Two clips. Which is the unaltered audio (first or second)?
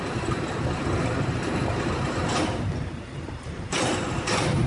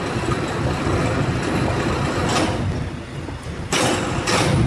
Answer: second